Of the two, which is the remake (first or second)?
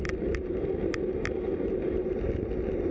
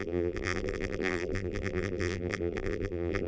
second